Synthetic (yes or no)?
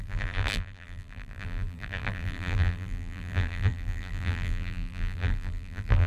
yes